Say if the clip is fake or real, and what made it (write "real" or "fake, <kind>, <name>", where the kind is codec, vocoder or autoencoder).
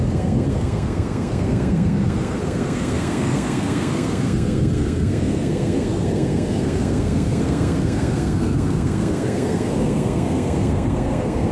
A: fake, codec, SNAC